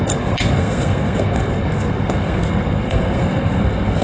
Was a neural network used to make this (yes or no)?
yes